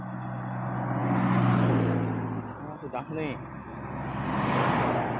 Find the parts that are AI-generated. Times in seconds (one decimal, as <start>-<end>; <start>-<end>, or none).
none